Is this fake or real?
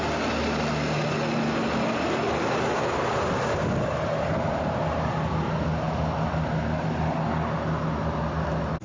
real